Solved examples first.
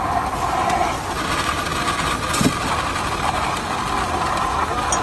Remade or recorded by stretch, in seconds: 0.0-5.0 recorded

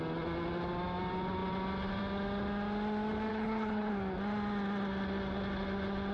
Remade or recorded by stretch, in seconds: 0.0-3.3 recorded; 3.3-3.9 remade; 3.9-6.1 recorded